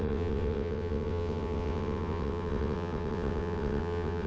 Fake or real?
fake